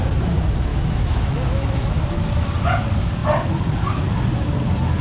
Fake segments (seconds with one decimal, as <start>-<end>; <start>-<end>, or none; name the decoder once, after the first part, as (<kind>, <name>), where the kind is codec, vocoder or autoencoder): 0.7-1.8 (autoencoder, DAC-VAE)